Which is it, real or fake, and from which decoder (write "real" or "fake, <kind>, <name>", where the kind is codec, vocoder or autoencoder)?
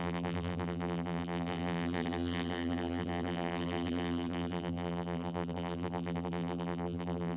fake, vocoder, BigVGAN v2